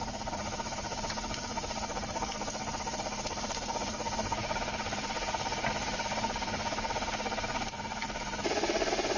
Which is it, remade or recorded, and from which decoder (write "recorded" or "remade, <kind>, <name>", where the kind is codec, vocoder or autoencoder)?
remade, vocoder, BigVGAN v2